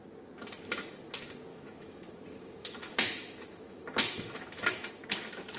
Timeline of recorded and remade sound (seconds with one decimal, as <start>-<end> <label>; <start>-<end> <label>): 0.0-1.5 recorded; 1.5-4.9 remade; 4.9-5.6 recorded